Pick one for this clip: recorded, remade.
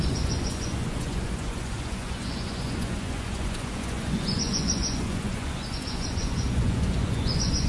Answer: remade